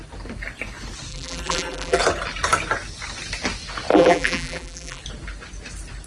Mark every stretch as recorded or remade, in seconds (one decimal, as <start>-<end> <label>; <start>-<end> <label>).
0.0-1.1 recorded; 1.1-2.0 remade; 2.0-3.9 recorded; 3.9-5.0 remade; 5.0-6.1 recorded

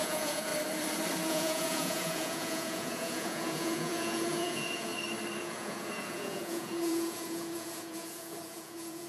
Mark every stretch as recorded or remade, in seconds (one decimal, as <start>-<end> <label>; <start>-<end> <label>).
0.0-0.5 remade; 0.5-1.3 recorded; 1.3-4.9 remade; 4.9-5.4 recorded; 5.4-9.1 remade

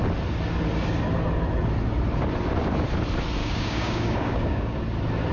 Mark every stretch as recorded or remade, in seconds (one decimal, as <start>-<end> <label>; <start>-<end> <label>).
0.0-3.4 recorded; 3.4-4.8 remade; 4.8-5.3 recorded

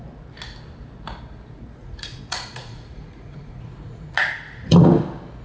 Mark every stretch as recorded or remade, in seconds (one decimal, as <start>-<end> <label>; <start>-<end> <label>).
0.0-1.8 recorded; 1.8-4.9 remade; 4.9-5.4 recorded

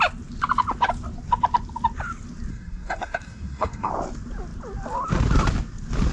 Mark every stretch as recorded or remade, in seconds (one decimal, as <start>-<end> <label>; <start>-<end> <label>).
0.0-2.5 recorded; 2.5-3.9 remade; 3.9-6.1 recorded